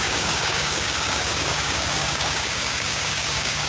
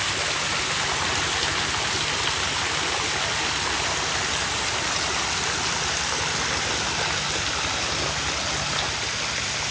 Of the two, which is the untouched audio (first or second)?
second